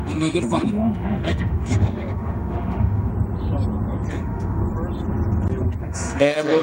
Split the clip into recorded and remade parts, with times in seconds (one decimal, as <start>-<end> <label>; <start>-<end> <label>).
0.0-3.1 remade; 3.1-4.1 recorded; 4.1-4.6 remade; 4.6-5.8 recorded; 5.8-6.6 remade